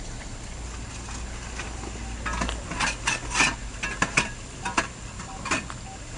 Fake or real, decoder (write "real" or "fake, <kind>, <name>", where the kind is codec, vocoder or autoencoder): fake, vocoder, BigVGAN v2